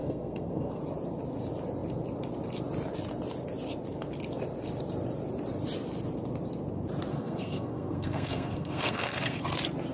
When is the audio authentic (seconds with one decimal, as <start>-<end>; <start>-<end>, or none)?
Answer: 0.8-7.1; 9.4-9.9